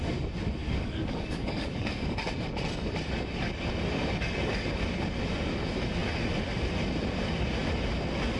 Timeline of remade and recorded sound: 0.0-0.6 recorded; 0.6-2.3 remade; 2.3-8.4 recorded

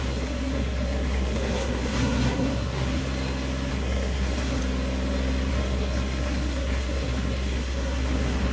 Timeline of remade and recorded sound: 0.0-3.0 remade; 3.0-3.7 recorded; 3.7-4.6 remade; 4.6-5.5 recorded; 5.5-8.5 remade

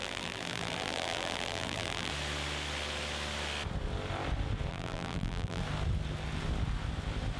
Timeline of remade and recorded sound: 0.0-2.1 remade; 2.1-4.7 recorded; 4.7-5.6 remade; 5.6-7.4 recorded

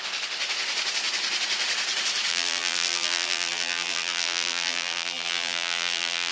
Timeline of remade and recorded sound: 0.0-2.3 recorded; 2.3-6.3 remade

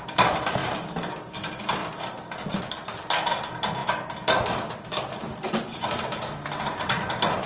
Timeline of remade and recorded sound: 0.0-7.5 recorded

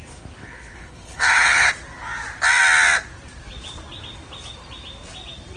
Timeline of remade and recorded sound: 0.0-0.4 recorded; 0.4-1.7 remade; 1.7-5.6 recorded

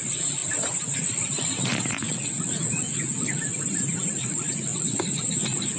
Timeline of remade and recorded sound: 0.0-0.4 remade; 0.4-1.9 recorded; 1.9-3.4 remade; 3.4-4.1 recorded; 4.1-5.8 remade